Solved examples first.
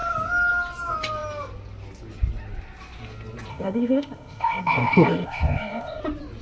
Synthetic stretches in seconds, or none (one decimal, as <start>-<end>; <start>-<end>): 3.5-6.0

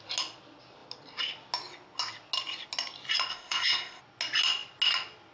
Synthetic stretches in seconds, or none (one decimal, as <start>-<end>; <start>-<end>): 3.3-4.0

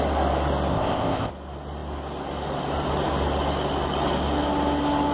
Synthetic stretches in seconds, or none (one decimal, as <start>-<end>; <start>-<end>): 0.7-1.3